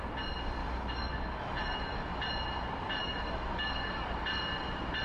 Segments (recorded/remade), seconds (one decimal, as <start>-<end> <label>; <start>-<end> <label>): 0.0-0.6 recorded; 0.6-2.2 remade; 2.2-3.0 recorded; 3.0-3.9 remade; 3.9-5.0 recorded